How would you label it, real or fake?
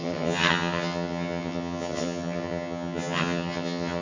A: fake